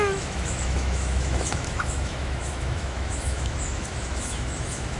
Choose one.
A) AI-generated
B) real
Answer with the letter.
A